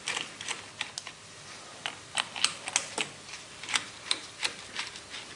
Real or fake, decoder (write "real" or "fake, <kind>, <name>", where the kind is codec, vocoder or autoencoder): real